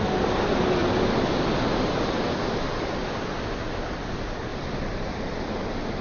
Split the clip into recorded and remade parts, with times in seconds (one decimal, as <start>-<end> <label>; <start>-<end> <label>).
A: 0.0-4.5 recorded; 4.5-5.6 remade; 5.6-6.0 recorded

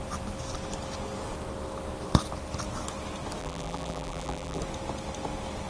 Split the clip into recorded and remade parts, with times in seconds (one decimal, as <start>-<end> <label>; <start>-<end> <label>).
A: 0.0-3.4 recorded; 3.4-4.6 remade; 4.6-5.7 recorded